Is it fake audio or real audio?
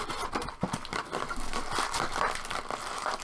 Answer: real